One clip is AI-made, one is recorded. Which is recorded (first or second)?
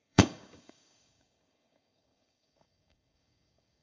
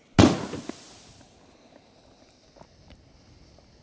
second